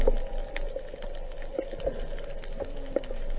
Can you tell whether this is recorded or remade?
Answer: recorded